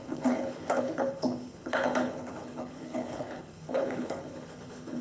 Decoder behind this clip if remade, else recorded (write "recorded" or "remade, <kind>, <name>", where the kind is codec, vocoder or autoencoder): remade, codec, HILCodec